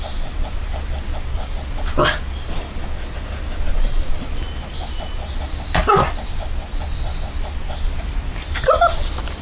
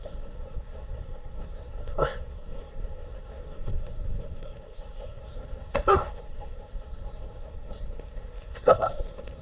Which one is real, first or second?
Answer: first